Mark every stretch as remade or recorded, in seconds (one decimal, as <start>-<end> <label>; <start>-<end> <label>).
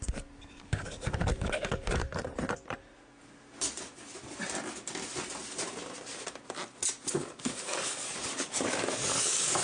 0.0-2.0 remade; 2.0-7.1 recorded; 7.1-9.6 remade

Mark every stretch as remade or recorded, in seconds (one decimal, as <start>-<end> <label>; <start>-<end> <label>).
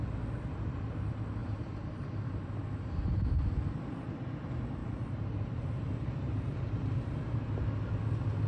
0.0-1.4 recorded; 1.4-2.9 remade; 2.9-4.8 recorded; 4.8-6.9 remade; 6.9-8.5 recorded